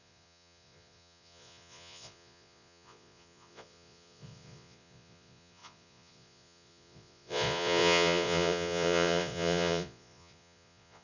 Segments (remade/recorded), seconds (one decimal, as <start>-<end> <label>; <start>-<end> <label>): 0.0-11.0 remade